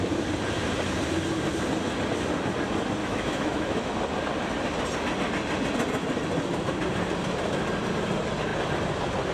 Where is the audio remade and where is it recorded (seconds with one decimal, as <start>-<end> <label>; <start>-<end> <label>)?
0.0-3.0 recorded; 3.0-3.9 remade; 3.9-9.3 recorded